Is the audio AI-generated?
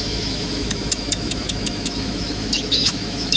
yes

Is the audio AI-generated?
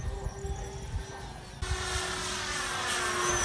no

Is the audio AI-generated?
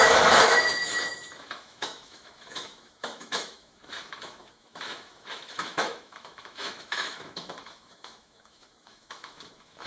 yes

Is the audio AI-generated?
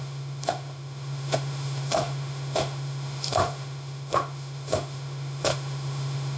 yes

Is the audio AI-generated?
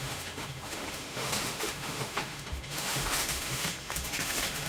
yes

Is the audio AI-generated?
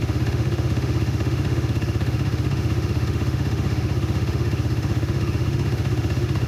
yes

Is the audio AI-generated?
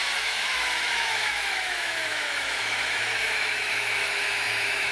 yes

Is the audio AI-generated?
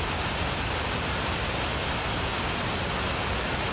no